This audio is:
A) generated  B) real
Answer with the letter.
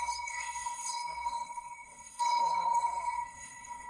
A